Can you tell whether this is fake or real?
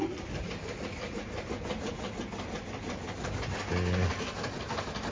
real